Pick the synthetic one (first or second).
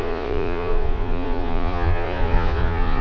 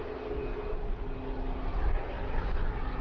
first